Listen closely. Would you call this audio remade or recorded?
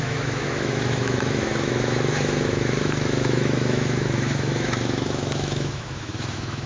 remade